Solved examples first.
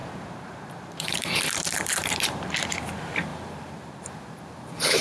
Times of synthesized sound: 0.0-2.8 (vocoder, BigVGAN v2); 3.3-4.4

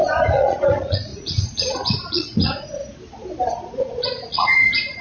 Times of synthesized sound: 0.0-2.8 (vocoder, Vocos); 3.5-5.0

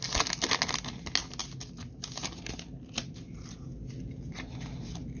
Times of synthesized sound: none